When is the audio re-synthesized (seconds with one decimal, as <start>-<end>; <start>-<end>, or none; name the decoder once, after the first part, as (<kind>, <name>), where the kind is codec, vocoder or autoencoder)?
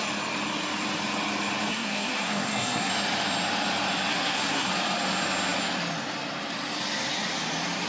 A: 1.7-2.9 (codec, SNAC); 4.1-4.7